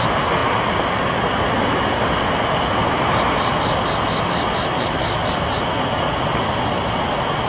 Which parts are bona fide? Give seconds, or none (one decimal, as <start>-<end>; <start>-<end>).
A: 0.0-7.5